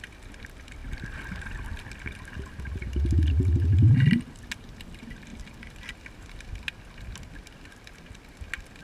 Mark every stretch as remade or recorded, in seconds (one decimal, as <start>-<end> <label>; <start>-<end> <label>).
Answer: 0.0-8.8 recorded

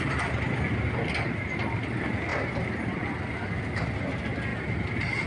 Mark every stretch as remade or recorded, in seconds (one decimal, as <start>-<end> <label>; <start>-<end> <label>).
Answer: 0.0-5.3 recorded

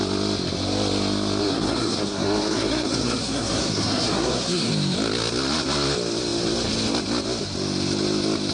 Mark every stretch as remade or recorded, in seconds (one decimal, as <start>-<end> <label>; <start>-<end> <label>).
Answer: 0.0-1.4 recorded; 1.4-4.7 remade; 4.7-8.5 recorded

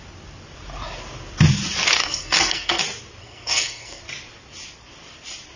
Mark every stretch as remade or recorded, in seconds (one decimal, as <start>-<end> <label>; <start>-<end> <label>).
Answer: 0.0-2.0 recorded; 2.0-2.8 remade; 2.8-3.2 recorded; 3.2-4.0 remade; 4.0-5.6 recorded

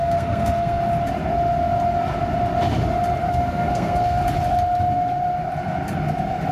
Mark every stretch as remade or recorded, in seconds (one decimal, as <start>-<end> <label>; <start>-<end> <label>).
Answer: 0.0-0.8 remade; 0.8-3.3 recorded; 3.3-4.2 remade; 4.2-6.5 recorded